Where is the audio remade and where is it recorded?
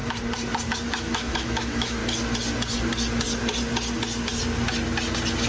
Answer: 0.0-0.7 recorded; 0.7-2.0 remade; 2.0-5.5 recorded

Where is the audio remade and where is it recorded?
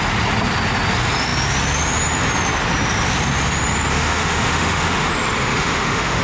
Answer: 0.0-3.9 recorded; 3.9-5.1 remade; 5.1-5.5 recorded; 5.5-6.2 remade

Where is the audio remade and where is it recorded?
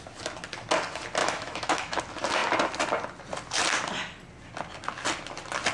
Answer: 0.0-1.2 recorded; 1.2-2.0 remade; 2.0-5.7 recorded